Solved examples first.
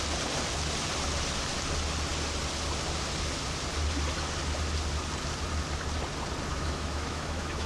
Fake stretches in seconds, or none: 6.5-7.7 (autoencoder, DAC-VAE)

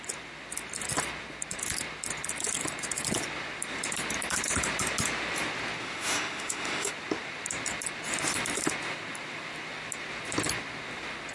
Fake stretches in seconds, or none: 5.8-6.9 (autoencoder, DAC-VAE)

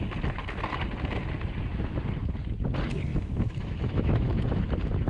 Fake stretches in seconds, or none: 3.1-4.6 (autoencoder, DAC-VAE)

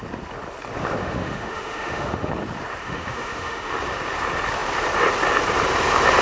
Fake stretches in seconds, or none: 1.0-2.3 (autoencoder, DAC-VAE); 2.8-3.7

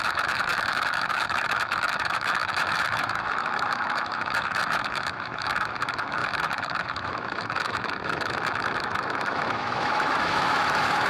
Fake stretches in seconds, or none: 0.0-11.1 (autoencoder, DAC-VAE)

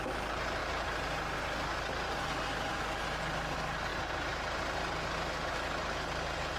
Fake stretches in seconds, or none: none

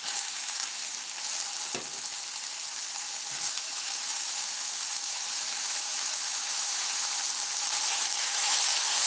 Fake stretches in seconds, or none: 0.0-0.8 (autoencoder, DAC-VAE); 3.5-7.2; 7.8-9.1